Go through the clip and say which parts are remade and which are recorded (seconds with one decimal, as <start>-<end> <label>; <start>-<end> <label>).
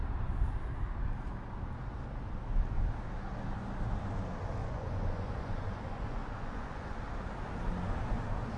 0.0-4.6 recorded; 4.6-7.0 remade; 7.0-8.6 recorded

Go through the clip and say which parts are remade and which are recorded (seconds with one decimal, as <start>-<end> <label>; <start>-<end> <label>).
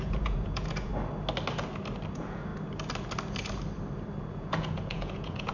0.0-0.9 remade; 0.9-2.1 recorded; 2.1-2.5 remade; 2.5-4.3 recorded; 4.3-5.5 remade